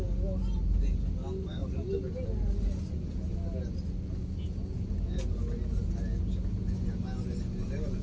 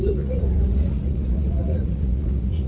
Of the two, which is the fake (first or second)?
second